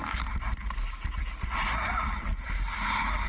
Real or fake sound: real